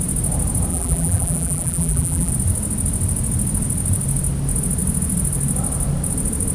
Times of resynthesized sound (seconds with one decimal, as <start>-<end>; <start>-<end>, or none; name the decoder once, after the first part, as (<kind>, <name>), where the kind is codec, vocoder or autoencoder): 0.7-2.3 (vocoder, BigVGAN v2)